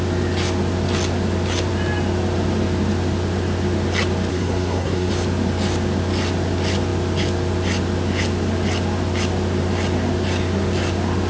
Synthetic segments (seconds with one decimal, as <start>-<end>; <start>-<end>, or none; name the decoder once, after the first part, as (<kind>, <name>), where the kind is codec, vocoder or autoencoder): 4.3-5.1 (codec, SNAC)